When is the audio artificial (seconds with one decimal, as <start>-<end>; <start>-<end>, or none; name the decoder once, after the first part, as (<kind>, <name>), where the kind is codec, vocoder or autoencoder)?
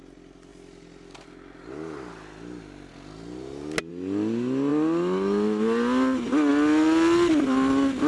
none